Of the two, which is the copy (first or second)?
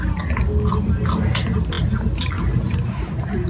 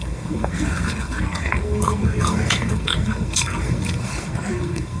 second